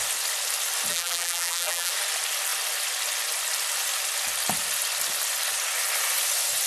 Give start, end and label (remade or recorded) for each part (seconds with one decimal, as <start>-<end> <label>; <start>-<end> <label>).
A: 0.0-0.9 recorded; 0.9-1.9 remade; 1.9-6.7 recorded